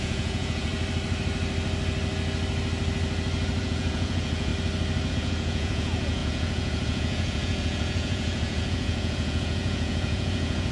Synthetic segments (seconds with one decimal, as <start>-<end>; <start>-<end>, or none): 0.0-0.7; 3.6-4.5; 5.1-10.7